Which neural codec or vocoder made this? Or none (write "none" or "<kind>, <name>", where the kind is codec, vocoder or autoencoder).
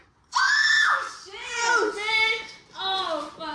none